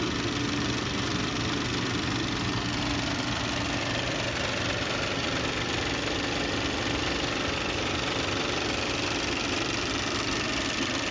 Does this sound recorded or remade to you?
recorded